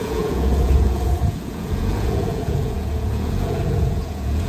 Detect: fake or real fake